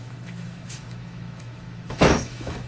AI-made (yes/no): yes